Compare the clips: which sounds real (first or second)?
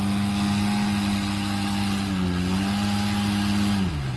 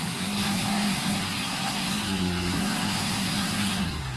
first